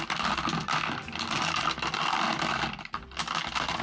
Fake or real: real